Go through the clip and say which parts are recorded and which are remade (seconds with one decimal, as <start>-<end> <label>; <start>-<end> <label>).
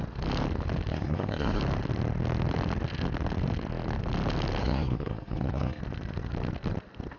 0.0-0.9 recorded; 0.9-1.6 remade; 1.6-4.6 recorded; 4.6-5.8 remade; 5.8-7.2 recorded